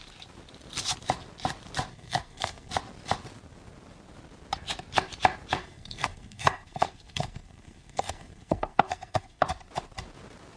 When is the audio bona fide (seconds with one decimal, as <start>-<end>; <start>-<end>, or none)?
0.0-1.9; 2.7-5.6; 9.4-10.6